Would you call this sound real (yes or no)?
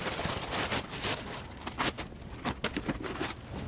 yes